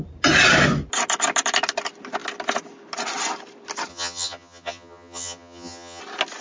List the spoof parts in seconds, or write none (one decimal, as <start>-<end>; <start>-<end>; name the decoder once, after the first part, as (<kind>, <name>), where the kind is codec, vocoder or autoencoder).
3.9-6.0 (vocoder, HiFi-GAN)